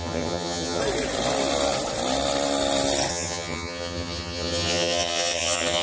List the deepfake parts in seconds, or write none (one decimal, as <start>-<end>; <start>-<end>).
0.0-0.8; 3.1-5.8

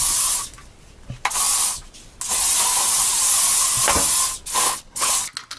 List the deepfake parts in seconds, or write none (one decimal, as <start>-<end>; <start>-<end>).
4.5-5.1